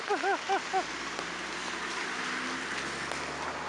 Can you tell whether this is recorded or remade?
recorded